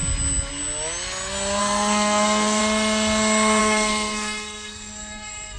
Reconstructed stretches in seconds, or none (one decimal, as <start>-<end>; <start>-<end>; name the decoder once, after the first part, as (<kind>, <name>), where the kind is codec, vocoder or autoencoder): 1.6-2.6 (codec, SNAC); 3.6-5.6